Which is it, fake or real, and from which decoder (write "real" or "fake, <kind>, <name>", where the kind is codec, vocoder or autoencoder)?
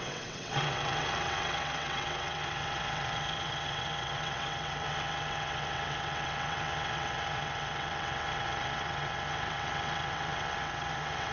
fake, vocoder, WaveNeXt